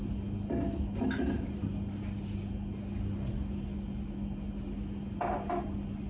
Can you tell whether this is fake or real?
real